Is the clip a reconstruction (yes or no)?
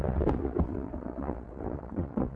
yes